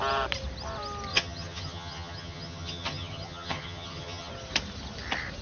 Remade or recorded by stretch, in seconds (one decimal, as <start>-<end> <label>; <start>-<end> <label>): 0.0-1.1 recorded; 1.1-4.3 remade; 4.3-5.4 recorded

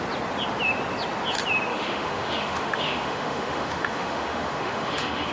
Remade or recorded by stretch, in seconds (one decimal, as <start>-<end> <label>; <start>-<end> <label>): 0.0-1.7 recorded; 1.7-5.3 remade

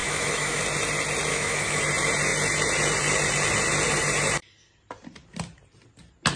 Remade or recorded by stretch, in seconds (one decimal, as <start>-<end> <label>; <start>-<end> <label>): 0.0-0.6 remade; 0.6-1.3 recorded; 1.3-1.8 remade; 1.8-6.4 recorded